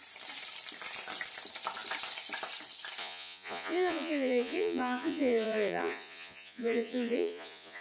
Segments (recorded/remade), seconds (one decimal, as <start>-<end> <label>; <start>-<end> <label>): 0.0-3.0 recorded; 3.0-7.8 remade